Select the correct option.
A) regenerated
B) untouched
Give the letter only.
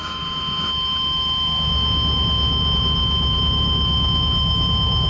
A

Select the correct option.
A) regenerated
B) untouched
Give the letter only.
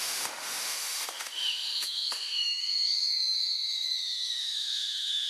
A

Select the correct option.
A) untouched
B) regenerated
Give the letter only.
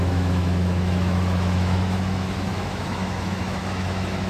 B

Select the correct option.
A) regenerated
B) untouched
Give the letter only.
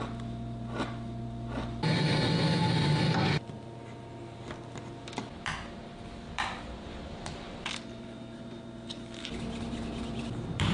B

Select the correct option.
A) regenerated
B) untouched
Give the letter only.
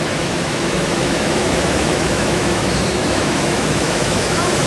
A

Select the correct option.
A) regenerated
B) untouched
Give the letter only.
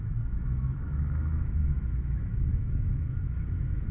A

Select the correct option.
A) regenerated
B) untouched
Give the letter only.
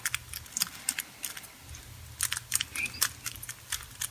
B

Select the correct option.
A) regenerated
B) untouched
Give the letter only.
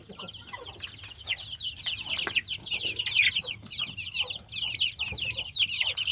B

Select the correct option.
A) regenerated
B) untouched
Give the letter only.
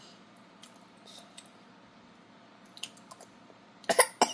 B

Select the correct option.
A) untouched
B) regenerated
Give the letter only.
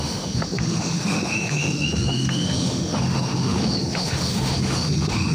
B